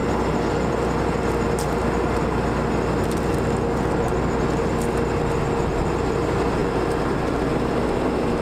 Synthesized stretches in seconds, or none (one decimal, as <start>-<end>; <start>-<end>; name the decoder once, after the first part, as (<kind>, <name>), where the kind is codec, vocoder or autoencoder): 6.6-7.2 (vocoder, BigVGAN v2)